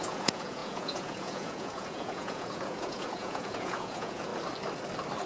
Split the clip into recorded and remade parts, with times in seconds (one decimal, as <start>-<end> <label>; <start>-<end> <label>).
0.0-4.3 remade; 4.3-5.3 recorded